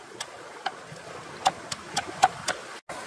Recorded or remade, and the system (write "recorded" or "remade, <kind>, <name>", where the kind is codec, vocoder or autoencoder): recorded